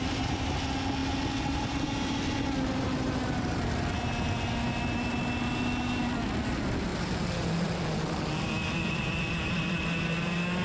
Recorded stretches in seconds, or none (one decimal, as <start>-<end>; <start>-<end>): 0.0-10.6